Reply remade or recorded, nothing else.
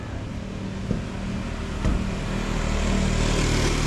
recorded